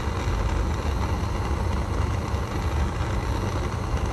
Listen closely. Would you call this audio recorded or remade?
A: recorded